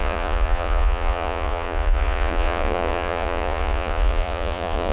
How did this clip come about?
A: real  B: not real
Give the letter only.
B